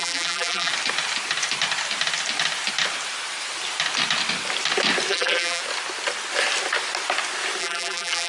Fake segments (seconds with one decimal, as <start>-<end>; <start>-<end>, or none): 0.0-0.7; 5.1-5.6; 7.6-8.3